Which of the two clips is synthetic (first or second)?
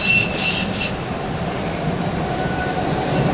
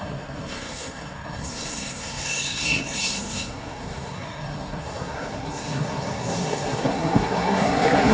second